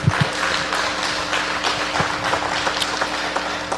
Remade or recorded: recorded